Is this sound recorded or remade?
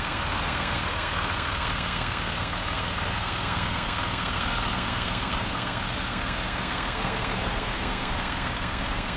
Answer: remade